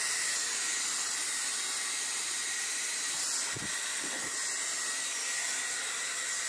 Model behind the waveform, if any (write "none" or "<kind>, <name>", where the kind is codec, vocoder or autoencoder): none